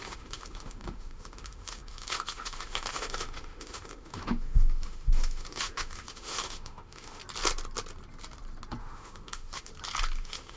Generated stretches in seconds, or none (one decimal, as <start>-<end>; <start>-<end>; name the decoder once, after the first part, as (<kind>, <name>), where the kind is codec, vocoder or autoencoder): 0.0-7.2 (autoencoder, DAC-VAE); 8.8-9.7; 10.2-10.6